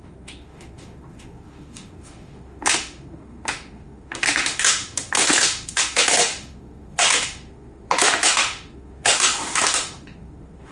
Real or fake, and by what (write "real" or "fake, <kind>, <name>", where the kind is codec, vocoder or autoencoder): fake, autoencoder, DAC-VAE